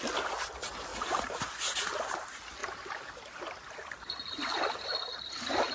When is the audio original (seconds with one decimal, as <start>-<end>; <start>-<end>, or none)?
0.0-0.9; 1.4-2.6